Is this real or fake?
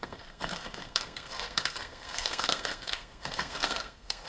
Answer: fake